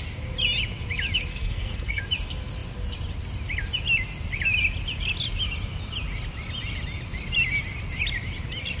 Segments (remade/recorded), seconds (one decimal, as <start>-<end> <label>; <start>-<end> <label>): 0.0-1.3 recorded; 1.3-2.0 remade; 2.0-8.8 recorded